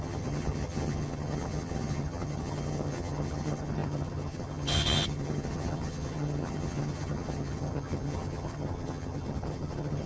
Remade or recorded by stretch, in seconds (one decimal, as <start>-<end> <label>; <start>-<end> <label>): 0.0-10.1 remade